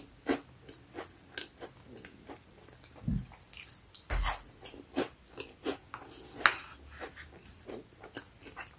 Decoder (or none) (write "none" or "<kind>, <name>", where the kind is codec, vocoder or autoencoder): none